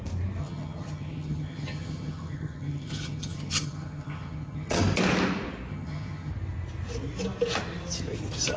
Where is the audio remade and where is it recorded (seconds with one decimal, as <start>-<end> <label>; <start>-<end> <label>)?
0.0-0.4 recorded; 0.4-4.8 remade; 4.8-5.7 recorded; 5.7-6.3 remade; 6.3-8.6 recorded